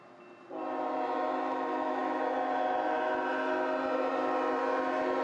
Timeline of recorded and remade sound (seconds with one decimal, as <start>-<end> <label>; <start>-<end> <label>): 0.0-5.2 recorded